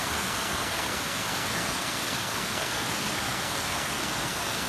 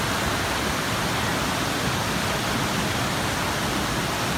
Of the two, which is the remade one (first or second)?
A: first